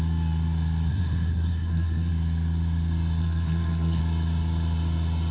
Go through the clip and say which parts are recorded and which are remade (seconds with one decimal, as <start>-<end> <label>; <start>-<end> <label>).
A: 0.0-0.9 recorded; 0.9-2.1 remade; 2.1-3.2 recorded; 3.2-4.0 remade; 4.0-5.3 recorded